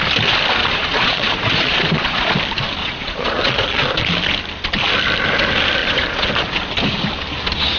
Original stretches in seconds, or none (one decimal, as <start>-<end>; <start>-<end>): 0.0-0.6; 2.3-2.8; 3.8-5.8; 6.3-7.8